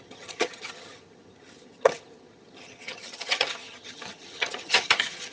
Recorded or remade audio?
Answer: remade